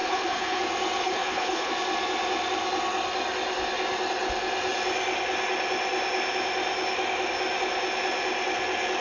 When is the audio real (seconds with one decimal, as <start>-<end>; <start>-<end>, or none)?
0.6-1.0; 1.7-9.0